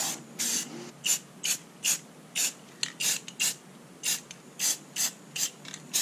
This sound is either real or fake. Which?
real